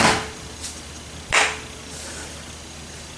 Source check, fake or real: real